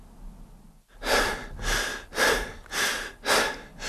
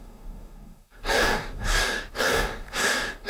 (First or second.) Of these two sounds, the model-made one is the second